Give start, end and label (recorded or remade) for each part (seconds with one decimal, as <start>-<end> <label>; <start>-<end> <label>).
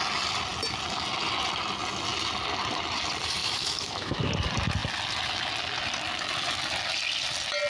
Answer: 0.0-3.4 recorded; 3.4-4.3 remade; 4.3-7.7 recorded